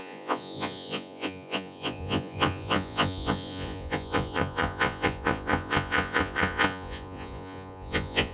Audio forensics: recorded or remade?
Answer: remade